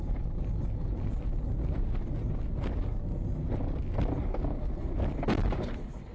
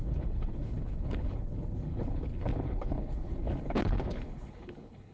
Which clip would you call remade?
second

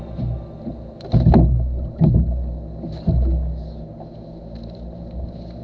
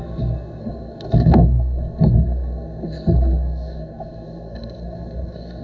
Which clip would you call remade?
second